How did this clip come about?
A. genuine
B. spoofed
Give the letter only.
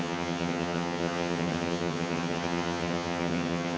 B